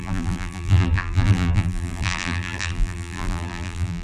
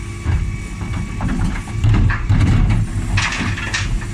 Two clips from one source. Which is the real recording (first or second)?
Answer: second